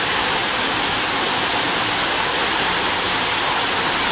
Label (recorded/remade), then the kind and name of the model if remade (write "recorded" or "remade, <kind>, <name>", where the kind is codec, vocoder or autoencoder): recorded